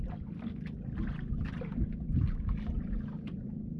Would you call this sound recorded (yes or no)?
yes